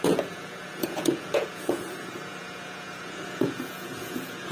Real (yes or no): no